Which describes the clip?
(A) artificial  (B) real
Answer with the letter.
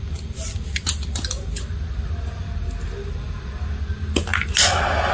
B